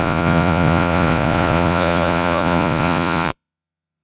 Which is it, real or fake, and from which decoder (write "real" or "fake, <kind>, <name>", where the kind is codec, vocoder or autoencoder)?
fake, vocoder, Vocos